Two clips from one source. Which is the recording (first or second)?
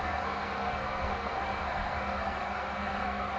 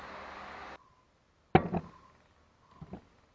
second